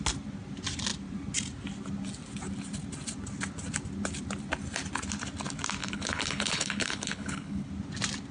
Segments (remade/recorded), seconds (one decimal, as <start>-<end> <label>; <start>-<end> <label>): 0.0-5.8 recorded; 5.8-7.7 remade; 7.7-8.3 recorded